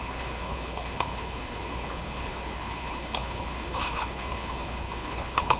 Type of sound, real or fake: fake